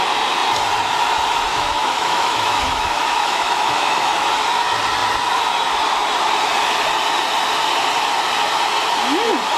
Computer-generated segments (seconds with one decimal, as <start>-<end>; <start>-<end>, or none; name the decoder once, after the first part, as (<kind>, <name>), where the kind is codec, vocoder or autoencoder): 1.5-4.3 (autoencoder, DAC-VAE)

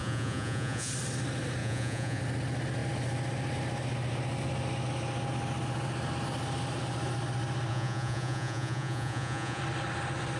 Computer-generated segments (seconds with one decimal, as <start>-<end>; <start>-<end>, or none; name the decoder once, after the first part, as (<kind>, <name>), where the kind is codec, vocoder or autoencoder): 0.0-0.9 (vocoder, Vocos); 1.6-2.2; 7.7-9.6

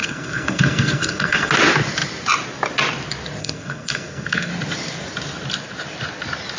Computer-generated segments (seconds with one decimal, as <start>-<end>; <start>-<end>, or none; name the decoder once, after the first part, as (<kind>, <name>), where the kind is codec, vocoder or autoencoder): 0.0-1.5 (codec, SNAC); 3.4-4.5

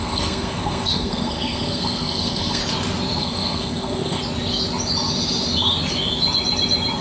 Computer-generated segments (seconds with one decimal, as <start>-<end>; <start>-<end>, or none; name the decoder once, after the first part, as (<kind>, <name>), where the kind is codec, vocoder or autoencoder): 0.0-2.6 (codec, SNAC); 3.2-4.2